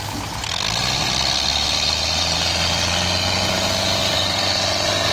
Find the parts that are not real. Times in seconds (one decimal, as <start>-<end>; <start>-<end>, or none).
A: 1.5-2.2; 4.0-5.1